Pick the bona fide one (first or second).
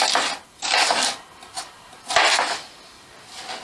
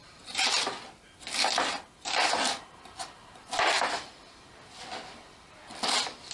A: first